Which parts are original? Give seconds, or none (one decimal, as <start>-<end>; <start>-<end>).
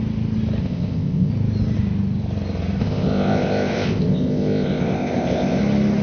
0.0-0.6; 1.3-2.8; 5.6-6.0